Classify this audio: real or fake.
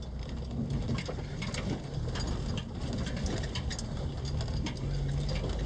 real